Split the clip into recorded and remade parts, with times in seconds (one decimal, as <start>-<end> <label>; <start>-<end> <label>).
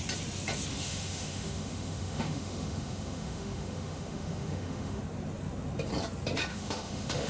0.0-0.7 recorded; 0.7-5.0 remade; 5.0-6.5 recorded; 6.5-7.3 remade